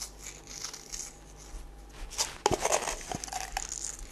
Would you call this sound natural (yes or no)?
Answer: yes